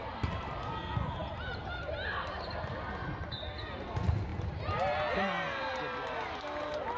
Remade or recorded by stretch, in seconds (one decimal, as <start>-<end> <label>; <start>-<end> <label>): 0.0-7.0 recorded